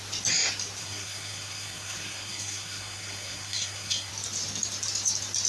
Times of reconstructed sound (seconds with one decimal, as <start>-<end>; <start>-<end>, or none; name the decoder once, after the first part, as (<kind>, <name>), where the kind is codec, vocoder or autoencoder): 0.8-4.1 (codec, SNAC)